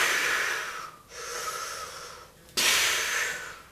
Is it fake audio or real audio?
real